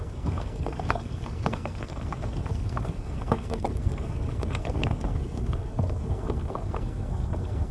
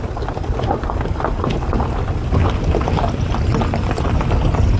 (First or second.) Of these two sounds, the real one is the second